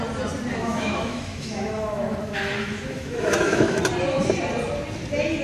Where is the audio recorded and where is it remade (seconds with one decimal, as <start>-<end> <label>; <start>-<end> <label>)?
0.0-0.6 recorded; 0.6-3.8 remade; 3.8-5.4 recorded